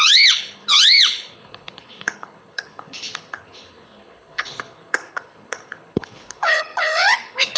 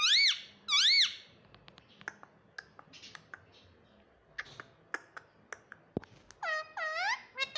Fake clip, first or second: first